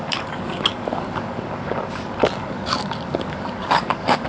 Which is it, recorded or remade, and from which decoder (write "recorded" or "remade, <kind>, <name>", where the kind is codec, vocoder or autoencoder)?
remade, codec, DAC